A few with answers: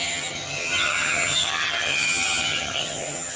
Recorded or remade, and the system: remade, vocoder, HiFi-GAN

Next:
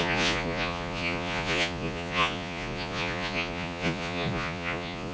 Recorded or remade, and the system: remade, vocoder, Vocos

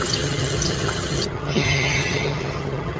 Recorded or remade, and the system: remade, vocoder, HiFi-GAN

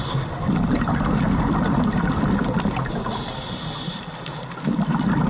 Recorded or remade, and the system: recorded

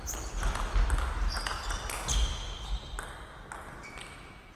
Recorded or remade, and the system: recorded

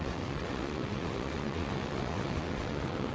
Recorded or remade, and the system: remade, vocoder, WaveNeXt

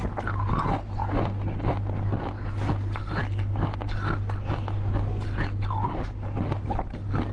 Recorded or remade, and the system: recorded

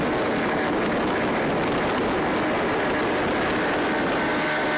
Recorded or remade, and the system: recorded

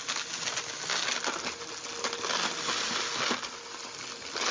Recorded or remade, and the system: recorded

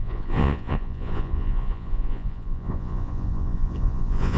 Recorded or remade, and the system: remade, vocoder, Vocos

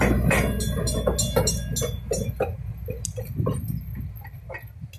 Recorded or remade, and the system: recorded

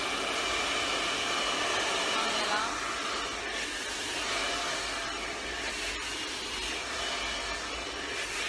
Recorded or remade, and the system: recorded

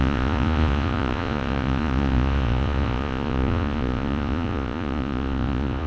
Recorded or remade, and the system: remade, vocoder, Vocos